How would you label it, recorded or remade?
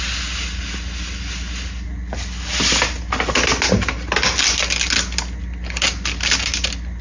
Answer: recorded